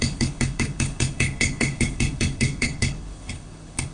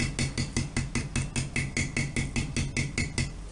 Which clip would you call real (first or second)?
second